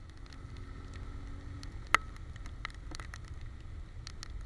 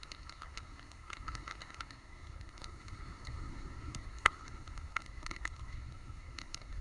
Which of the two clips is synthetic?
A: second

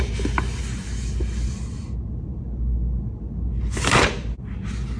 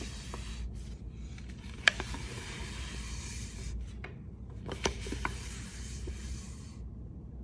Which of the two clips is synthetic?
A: second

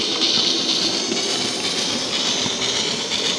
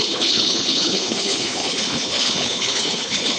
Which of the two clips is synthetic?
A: second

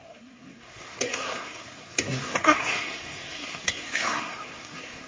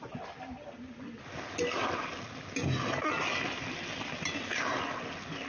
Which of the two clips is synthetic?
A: first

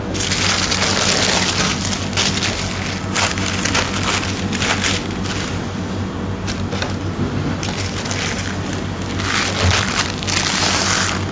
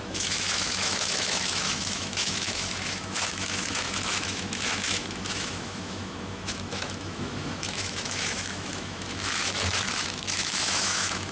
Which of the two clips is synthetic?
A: second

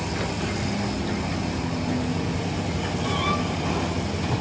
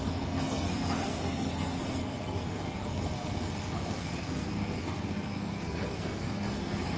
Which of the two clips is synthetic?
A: second